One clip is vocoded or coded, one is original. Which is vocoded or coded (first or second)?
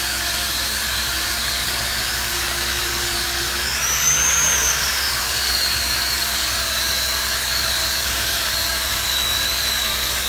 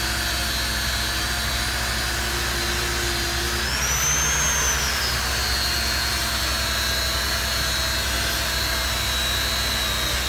first